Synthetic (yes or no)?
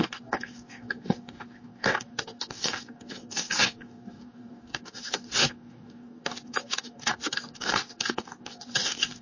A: yes